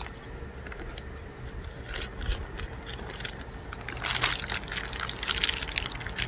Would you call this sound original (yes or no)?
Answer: yes